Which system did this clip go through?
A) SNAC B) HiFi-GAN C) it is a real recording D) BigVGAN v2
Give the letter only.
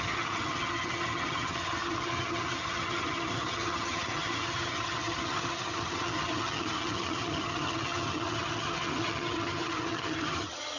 B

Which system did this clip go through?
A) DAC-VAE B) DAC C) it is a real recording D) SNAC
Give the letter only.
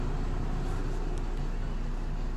C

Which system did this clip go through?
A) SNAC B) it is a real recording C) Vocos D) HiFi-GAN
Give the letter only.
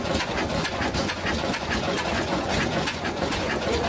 C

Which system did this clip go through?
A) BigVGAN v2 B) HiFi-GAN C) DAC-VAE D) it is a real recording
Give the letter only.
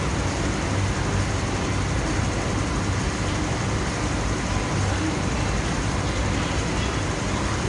D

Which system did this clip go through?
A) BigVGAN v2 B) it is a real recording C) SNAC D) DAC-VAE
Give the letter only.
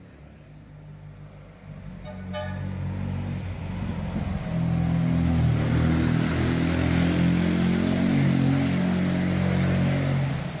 B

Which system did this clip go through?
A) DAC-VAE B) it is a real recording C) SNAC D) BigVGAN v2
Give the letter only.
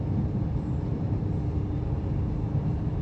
B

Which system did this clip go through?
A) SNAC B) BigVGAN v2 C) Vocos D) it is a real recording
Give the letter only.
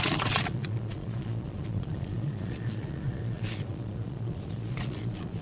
C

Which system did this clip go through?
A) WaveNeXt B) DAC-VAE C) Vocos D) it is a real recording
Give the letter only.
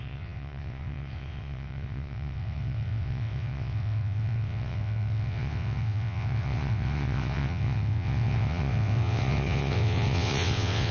A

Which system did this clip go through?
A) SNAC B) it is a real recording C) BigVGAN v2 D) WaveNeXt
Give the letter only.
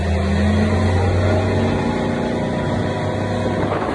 B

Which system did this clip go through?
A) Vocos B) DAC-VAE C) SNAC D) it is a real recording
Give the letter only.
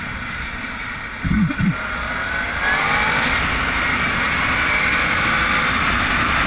D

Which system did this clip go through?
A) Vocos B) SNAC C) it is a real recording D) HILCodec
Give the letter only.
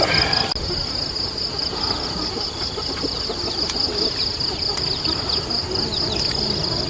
C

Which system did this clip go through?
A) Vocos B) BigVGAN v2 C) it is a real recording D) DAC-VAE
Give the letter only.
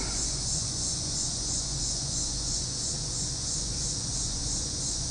A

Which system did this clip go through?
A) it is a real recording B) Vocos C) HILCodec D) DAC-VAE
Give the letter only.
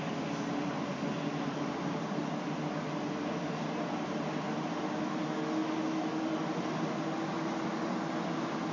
A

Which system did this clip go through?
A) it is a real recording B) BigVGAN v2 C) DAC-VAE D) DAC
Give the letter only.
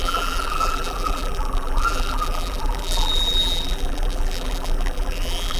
B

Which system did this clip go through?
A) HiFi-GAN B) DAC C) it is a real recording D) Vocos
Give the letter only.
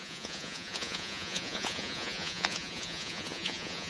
D